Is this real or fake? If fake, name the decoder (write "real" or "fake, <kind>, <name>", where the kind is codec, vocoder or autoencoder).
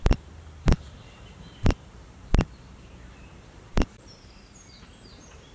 fake, vocoder, BigVGAN v2